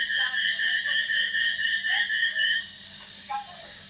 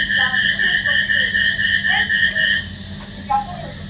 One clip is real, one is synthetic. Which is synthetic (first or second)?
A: first